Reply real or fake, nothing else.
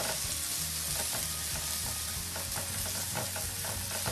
real